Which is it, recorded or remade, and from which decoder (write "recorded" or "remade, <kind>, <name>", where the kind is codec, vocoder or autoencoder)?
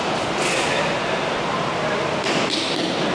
remade, vocoder, BigVGAN v2